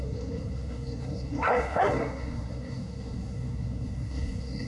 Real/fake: fake